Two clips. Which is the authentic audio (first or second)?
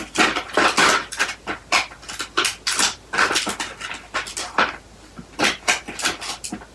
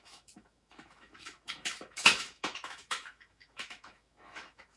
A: first